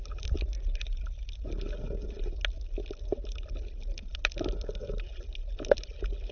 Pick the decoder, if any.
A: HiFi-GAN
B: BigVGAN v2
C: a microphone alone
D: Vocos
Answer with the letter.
C